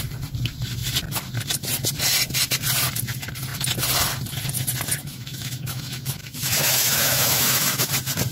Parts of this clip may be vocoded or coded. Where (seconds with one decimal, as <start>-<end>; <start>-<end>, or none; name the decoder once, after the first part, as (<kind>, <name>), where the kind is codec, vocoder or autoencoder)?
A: 5.0-7.9 (autoencoder, DAC-VAE)

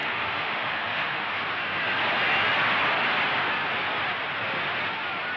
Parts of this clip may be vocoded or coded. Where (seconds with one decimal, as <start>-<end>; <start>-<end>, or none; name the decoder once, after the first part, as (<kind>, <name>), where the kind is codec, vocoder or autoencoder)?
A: 0.0-1.3 (autoencoder, DAC-VAE)